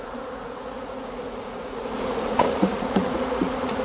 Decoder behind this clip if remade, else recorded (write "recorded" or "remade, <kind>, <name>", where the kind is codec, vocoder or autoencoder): remade, vocoder, Vocos